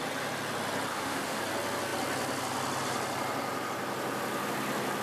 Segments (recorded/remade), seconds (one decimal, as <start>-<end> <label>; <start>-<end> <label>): 0.0-0.9 recorded; 0.9-1.4 remade; 1.4-5.0 recorded